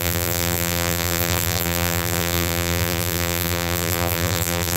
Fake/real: fake